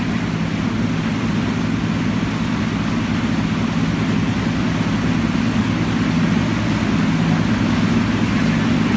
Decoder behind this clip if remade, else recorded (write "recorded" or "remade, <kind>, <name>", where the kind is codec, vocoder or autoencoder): recorded